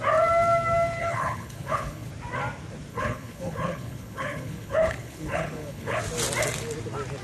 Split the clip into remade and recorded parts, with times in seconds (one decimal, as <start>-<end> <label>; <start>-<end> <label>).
0.0-1.0 recorded; 1.0-2.1 remade; 2.1-2.9 recorded; 2.9-6.0 remade; 6.0-7.2 recorded